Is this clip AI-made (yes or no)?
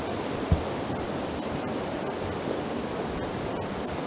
no